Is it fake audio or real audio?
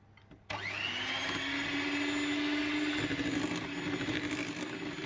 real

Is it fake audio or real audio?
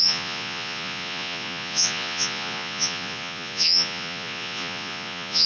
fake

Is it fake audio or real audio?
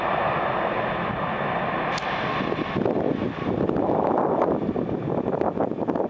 real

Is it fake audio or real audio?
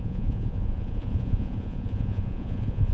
fake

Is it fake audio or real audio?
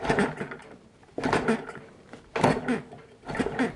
real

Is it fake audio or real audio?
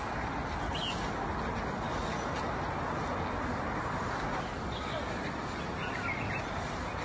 real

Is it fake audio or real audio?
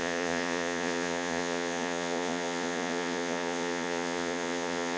fake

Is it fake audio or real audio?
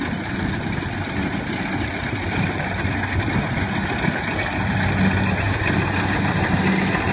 real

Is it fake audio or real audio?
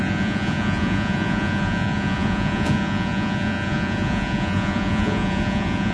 fake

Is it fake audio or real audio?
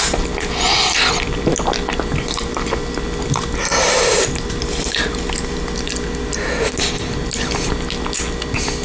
real